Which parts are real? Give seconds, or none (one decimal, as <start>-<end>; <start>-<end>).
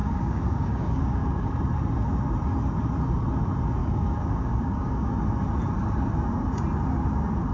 1.5-3.8; 5.1-7.5